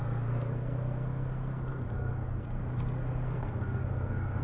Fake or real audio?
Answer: fake